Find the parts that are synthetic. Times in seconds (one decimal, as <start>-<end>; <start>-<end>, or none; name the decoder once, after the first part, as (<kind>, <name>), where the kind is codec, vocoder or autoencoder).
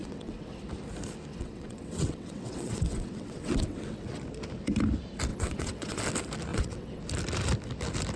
0.0-0.6 (vocoder, WaveNeXt); 1.3-4.2; 5.3-6.0; 6.5-7.0